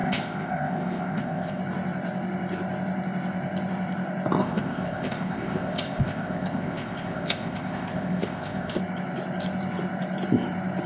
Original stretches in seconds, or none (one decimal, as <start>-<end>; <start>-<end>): 1.6-4.4; 8.8-10.9